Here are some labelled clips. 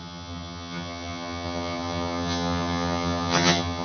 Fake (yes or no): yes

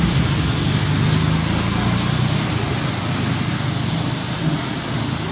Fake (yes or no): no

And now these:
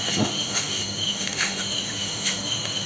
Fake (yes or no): yes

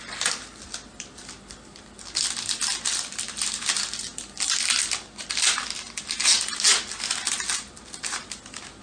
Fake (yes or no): no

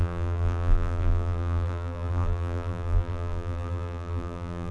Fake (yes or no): yes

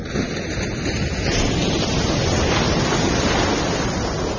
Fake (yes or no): no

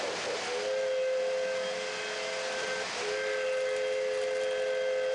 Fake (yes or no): no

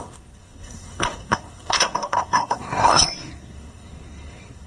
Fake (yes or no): yes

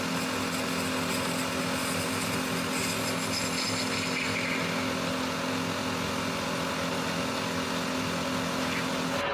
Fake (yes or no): no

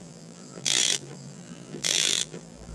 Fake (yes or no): yes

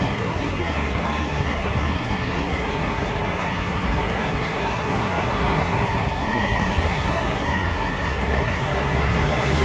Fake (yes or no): yes